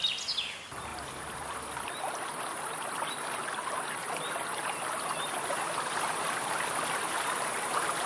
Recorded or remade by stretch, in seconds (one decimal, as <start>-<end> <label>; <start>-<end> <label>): 0.0-8.1 recorded